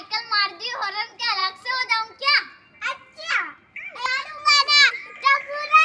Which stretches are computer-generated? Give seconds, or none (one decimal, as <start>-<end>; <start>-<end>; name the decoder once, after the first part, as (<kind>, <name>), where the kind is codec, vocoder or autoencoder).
none